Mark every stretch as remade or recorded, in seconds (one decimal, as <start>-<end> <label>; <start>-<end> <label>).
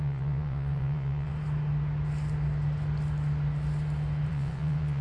0.0-1.3 remade; 1.3-4.3 recorded; 4.3-5.0 remade